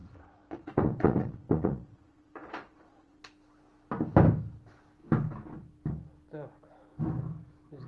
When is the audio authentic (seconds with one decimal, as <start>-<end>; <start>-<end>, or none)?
3.2-7.9